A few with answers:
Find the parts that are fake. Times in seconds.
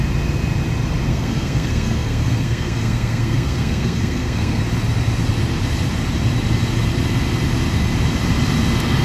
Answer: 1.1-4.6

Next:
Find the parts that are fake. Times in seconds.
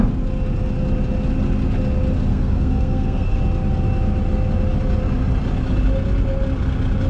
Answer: 2.3-3.4